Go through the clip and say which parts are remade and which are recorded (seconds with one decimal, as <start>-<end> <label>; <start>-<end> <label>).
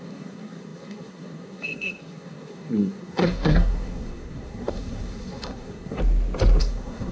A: 0.0-6.0 remade; 6.0-6.6 recorded; 6.6-7.1 remade